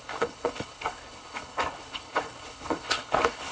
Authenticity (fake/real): fake